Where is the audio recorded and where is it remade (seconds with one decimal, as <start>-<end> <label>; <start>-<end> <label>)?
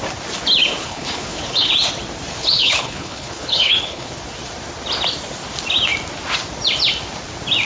0.0-0.8 recorded; 0.8-1.7 remade; 1.7-2.3 recorded; 2.3-4.1 remade; 4.1-7.6 recorded